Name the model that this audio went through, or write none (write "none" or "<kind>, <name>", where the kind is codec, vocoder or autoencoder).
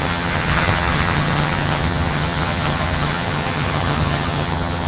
vocoder, HiFi-GAN